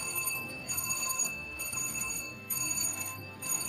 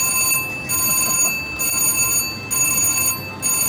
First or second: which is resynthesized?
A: first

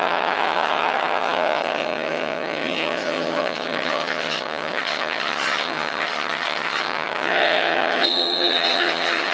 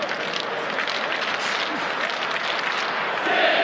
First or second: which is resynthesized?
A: first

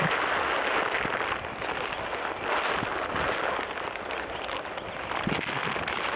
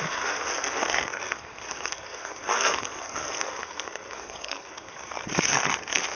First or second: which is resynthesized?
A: second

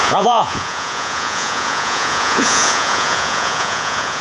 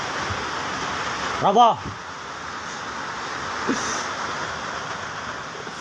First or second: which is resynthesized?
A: first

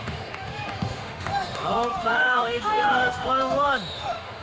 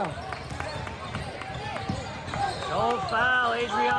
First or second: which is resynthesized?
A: first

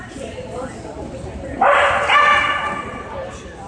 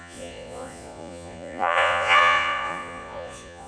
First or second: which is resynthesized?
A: second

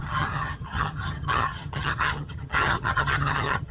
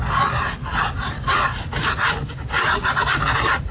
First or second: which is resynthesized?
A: first